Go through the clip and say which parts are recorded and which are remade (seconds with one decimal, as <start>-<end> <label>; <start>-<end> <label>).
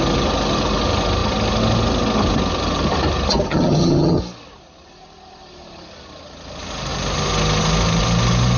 0.0-3.5 recorded; 3.5-4.2 remade; 4.2-8.6 recorded